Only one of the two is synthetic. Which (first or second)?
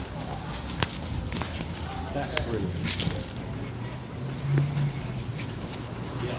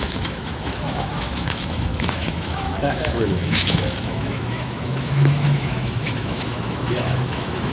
second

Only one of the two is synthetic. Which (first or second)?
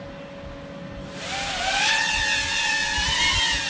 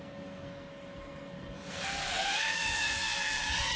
second